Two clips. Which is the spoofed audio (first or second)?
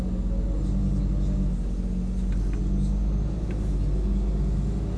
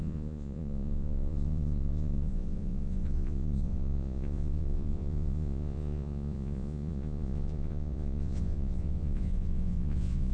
second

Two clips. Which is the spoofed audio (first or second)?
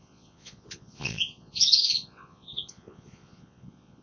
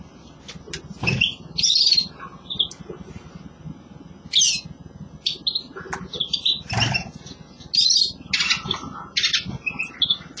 first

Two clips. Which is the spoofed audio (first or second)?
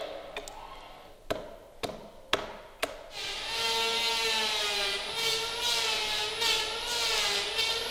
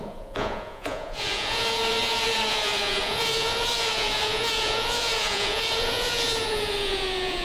second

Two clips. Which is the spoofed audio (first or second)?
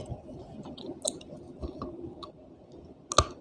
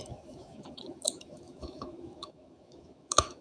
second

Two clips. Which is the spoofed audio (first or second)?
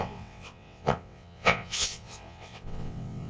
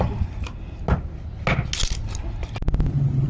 first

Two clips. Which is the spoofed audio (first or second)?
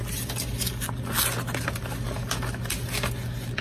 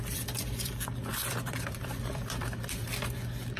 second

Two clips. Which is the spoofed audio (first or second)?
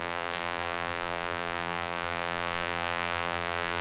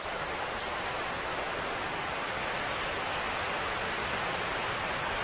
first